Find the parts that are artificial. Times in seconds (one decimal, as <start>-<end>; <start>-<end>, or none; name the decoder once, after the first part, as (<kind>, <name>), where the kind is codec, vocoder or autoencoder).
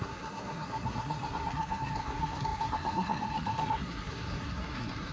0.0-5.1 (codec, SNAC)